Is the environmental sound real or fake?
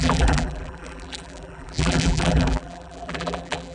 fake